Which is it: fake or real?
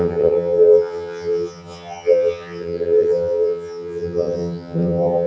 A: fake